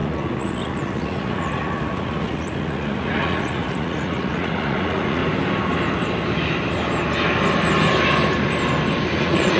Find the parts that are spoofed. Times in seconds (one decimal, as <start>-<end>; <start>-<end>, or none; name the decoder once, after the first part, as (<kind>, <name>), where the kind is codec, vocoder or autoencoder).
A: 0.0-5.2 (vocoder, Vocos); 9.2-9.6